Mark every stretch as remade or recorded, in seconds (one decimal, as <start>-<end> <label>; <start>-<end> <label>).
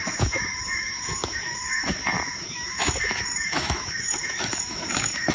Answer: 0.0-5.3 remade